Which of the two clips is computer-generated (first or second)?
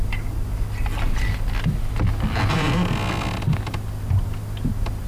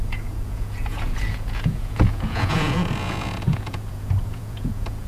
second